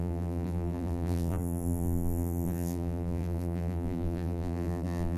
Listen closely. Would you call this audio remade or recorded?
remade